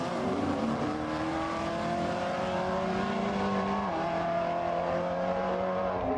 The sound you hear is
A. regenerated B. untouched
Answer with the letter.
A